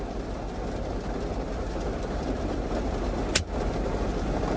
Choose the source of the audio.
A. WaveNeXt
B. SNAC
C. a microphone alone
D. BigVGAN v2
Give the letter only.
C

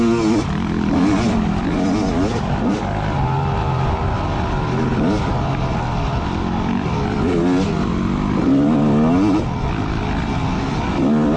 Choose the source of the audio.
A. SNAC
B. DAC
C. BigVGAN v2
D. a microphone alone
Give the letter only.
D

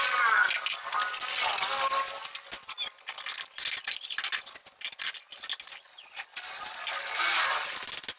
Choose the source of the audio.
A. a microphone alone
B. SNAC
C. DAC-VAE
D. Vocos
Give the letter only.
A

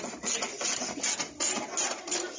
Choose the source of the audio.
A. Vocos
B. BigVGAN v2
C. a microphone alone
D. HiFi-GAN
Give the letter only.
C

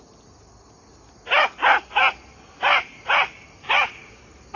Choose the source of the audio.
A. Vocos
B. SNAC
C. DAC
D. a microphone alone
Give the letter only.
D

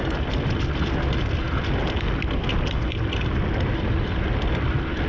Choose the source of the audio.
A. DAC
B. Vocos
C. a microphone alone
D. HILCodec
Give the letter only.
C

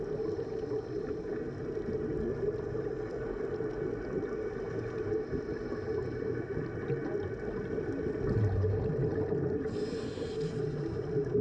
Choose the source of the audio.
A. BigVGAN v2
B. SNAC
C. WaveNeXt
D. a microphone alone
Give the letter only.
D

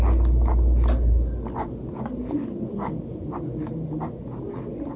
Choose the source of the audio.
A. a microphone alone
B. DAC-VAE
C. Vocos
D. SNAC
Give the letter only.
A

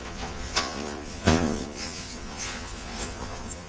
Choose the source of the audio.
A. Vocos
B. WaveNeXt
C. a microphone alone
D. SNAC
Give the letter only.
A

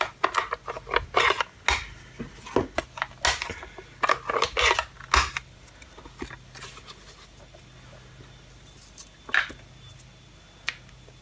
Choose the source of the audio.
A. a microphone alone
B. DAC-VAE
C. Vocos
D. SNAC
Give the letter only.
A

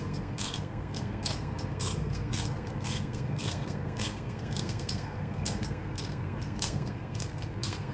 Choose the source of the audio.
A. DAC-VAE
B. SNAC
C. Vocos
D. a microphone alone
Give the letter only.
B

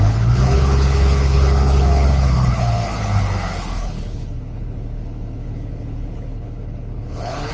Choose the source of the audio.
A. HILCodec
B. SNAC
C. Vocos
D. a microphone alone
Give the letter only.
A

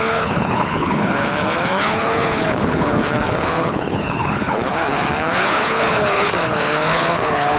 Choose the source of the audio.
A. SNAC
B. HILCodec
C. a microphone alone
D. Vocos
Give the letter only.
B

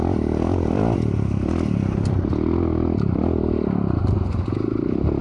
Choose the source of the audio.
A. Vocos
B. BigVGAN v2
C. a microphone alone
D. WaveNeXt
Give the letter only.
B